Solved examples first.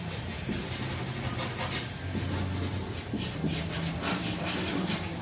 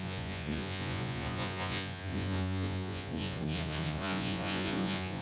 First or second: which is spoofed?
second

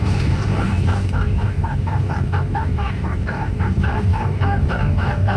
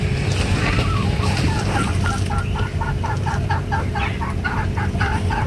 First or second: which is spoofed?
first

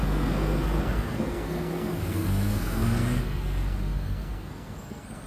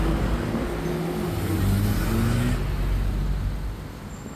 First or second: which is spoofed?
first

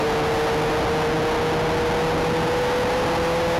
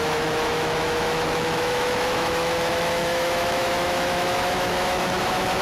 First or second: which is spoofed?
second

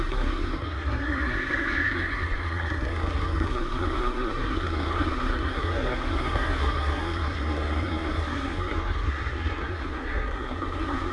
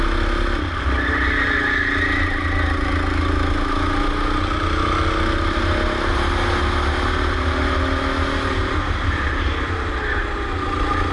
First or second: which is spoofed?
first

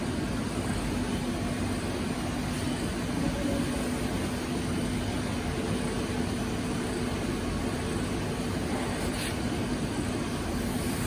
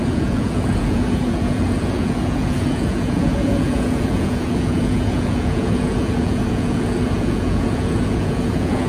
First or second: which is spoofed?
second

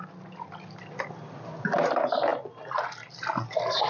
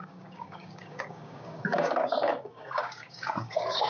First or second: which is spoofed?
second